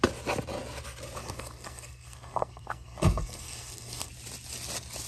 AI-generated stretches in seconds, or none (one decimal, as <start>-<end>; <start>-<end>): 1.2-4.1